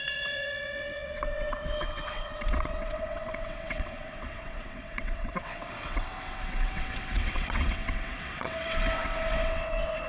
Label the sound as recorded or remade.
remade